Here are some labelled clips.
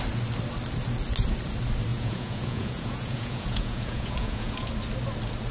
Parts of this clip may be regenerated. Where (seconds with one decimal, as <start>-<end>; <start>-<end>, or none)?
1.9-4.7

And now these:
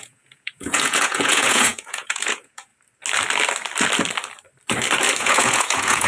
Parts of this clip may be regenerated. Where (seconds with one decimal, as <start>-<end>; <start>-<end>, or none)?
0.0-2.7; 5.2-6.1

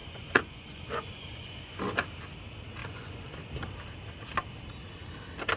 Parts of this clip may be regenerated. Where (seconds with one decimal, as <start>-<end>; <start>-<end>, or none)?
0.0-1.8; 2.8-3.4

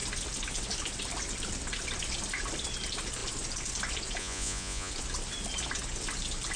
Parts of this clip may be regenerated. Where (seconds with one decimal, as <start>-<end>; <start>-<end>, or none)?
4.2-4.9